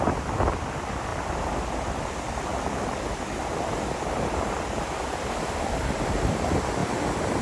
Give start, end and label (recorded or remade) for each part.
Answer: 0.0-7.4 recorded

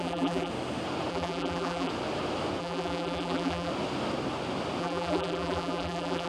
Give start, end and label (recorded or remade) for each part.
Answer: 0.0-0.5 remade; 0.5-1.1 recorded; 1.1-1.9 remade; 1.9-2.6 recorded; 2.6-3.7 remade; 3.7-4.8 recorded; 4.8-6.3 remade

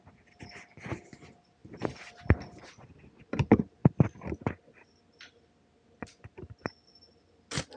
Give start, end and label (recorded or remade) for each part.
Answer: 0.0-7.8 recorded

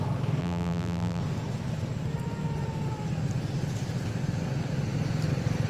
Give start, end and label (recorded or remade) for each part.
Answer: 0.0-0.4 recorded; 0.4-1.2 remade; 1.2-5.7 recorded

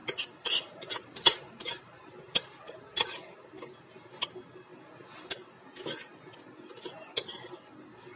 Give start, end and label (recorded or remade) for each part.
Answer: 0.0-2.8 remade; 2.8-8.2 recorded

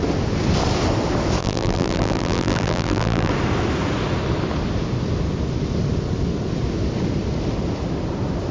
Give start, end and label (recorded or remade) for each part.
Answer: 0.0-1.4 recorded; 1.4-3.3 remade; 3.3-8.5 recorded

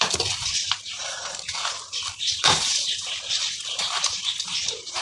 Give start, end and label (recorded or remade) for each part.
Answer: 0.0-5.0 remade